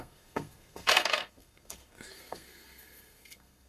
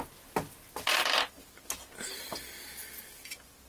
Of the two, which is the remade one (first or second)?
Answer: first